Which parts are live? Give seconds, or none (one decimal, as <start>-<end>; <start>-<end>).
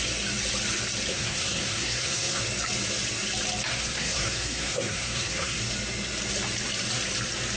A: 0.0-1.1; 2.4-3.7; 5.6-7.6